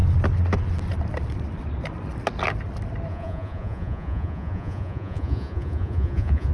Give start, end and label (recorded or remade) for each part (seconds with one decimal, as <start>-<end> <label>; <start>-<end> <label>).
0.0-3.1 recorded; 3.1-6.5 remade